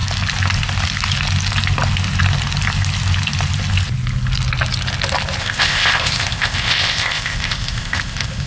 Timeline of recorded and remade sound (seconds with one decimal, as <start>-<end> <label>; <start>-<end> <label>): 0.0-5.4 recorded; 5.4-8.5 remade